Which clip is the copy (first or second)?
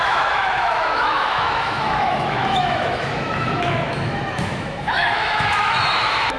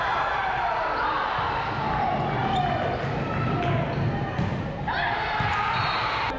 first